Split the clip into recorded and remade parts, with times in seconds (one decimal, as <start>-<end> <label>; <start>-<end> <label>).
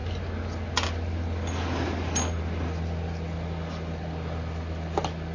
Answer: 0.0-5.3 recorded